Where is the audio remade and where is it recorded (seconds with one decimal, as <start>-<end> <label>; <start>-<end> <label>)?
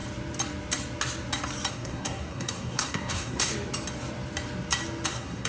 0.0-1.7 recorded; 1.7-3.5 remade; 3.5-5.1 recorded; 5.1-5.5 remade